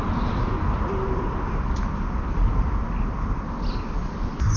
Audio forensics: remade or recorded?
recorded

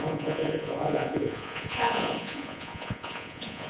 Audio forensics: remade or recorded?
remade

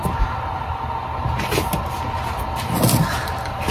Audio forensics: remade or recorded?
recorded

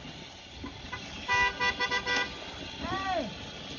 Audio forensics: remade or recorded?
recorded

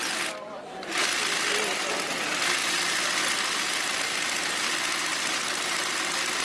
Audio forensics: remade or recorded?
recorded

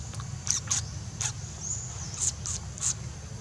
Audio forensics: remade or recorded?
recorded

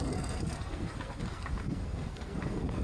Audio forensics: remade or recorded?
remade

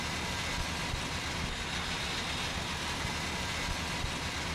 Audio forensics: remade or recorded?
recorded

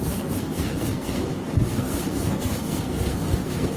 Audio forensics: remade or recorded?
remade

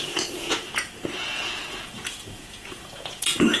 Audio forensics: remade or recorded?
remade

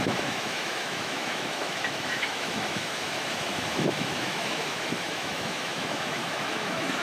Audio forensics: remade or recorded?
remade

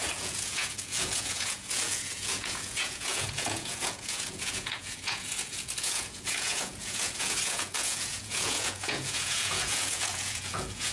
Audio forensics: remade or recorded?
remade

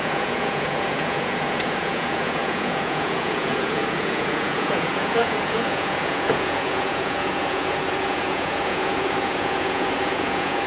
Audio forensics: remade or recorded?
remade